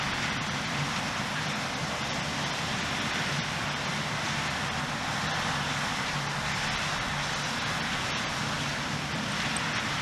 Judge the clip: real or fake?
real